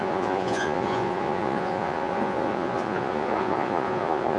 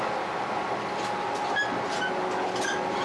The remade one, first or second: first